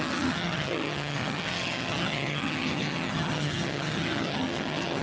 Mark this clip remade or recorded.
remade